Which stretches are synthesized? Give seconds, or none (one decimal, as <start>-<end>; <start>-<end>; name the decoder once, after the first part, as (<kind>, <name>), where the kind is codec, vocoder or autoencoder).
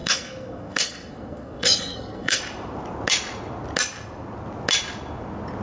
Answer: 0.0-2.4 (codec, SNAC)